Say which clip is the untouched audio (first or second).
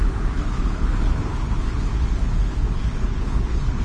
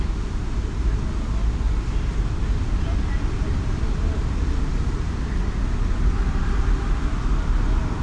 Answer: second